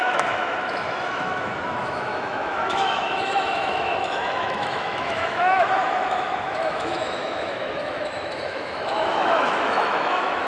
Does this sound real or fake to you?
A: fake